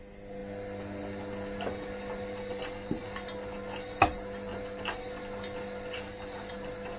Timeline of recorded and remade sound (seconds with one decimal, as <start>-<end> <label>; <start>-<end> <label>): 0.0-7.0 recorded